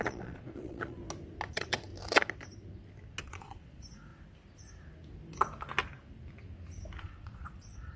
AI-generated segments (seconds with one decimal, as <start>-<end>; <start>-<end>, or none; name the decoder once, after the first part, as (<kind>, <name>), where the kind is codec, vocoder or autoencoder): 0.0-1.0 (vocoder, Vocos); 1.5-1.9; 3.2-4.1; 7.0-8.0